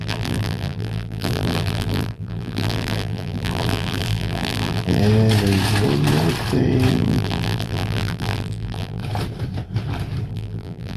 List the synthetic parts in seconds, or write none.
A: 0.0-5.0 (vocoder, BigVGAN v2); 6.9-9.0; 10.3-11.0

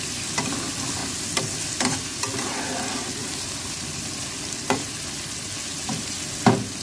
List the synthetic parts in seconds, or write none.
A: 1.0-5.0 (vocoder, BigVGAN v2); 5.7-6.3

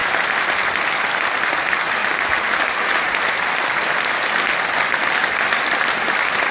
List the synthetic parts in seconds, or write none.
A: 2.0-3.2 (vocoder, BigVGAN v2)